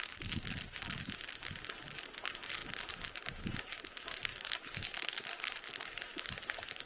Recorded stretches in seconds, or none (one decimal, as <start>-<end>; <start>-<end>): 0.0-6.9